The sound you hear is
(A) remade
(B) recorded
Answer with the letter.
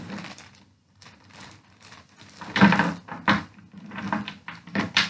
A